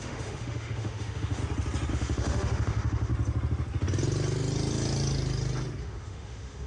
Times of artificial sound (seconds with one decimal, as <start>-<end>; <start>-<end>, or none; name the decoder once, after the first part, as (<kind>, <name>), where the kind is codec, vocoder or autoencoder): 0.0-1.4 (autoencoder, DAC-VAE); 1.9-3.1; 5.8-6.7